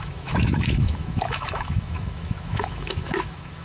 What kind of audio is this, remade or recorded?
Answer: remade